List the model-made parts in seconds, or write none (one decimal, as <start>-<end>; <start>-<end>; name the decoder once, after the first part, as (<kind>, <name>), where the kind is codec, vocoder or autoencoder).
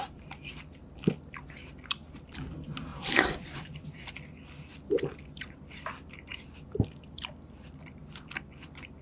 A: 2.9-4.1 (vocoder, BigVGAN v2); 8.0-9.0